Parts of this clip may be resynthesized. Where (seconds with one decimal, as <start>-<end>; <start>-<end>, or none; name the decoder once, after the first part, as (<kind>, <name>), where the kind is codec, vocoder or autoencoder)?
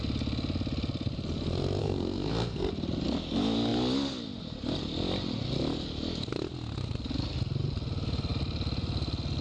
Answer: 1.8-2.7 (codec, SNAC)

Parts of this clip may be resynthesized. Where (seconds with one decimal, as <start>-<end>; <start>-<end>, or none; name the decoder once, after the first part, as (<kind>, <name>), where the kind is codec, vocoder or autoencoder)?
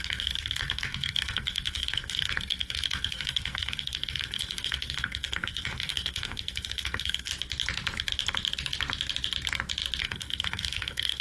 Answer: 0.0-7.3 (codec, SNAC); 10.0-11.2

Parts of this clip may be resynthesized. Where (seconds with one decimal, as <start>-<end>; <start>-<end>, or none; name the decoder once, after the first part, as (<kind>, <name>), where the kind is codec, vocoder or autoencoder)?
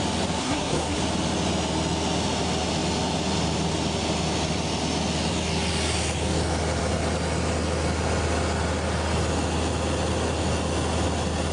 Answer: 0.4-1.0 (codec, SNAC)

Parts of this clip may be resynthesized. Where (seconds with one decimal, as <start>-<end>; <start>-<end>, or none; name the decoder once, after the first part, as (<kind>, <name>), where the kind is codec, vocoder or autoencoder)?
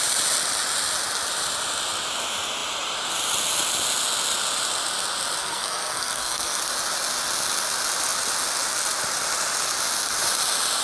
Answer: 5.4-6.6 (codec, SNAC)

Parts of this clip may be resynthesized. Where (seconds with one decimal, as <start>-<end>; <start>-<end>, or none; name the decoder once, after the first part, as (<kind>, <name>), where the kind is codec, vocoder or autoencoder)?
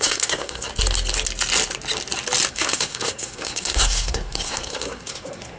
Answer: 0.0-0.7 (codec, SNAC); 2.5-5.6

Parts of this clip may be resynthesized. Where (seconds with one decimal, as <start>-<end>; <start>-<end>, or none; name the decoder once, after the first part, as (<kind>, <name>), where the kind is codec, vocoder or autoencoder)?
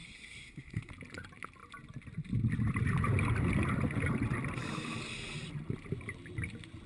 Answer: 0.0-0.9 (codec, SNAC)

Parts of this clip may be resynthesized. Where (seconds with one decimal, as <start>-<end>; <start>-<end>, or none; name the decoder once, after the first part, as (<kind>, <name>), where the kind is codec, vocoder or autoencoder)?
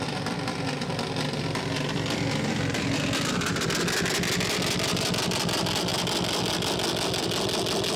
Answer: none